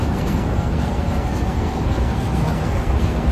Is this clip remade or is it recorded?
remade